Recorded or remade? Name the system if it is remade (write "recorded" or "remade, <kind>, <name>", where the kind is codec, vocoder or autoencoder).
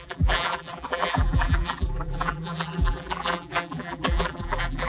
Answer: remade, vocoder, BigVGAN v2